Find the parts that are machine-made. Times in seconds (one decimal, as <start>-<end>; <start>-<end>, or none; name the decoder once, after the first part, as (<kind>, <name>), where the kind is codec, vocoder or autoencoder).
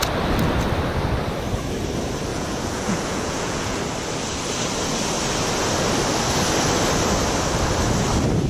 2.3-3.8 (vocoder, Vocos)